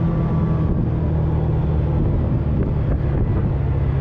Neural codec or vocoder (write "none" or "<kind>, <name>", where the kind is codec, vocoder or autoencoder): none